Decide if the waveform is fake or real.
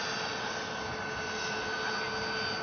real